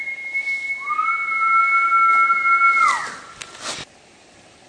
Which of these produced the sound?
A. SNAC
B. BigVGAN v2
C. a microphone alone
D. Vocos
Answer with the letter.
C